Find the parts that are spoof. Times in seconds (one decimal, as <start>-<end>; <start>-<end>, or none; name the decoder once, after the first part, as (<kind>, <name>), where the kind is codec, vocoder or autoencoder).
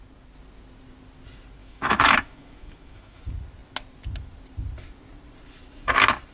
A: 1.6-3.2 (autoencoder, DAC-VAE)